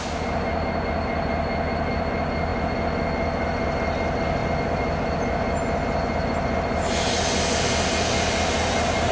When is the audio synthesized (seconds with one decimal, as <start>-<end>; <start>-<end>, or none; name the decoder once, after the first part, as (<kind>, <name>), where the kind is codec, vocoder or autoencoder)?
none